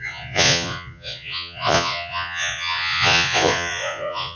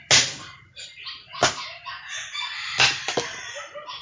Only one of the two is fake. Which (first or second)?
first